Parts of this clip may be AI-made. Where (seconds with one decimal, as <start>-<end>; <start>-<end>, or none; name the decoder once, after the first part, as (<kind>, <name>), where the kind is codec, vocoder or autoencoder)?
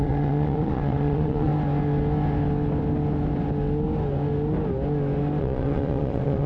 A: 0.0-1.5 (vocoder, Vocos); 5.4-6.5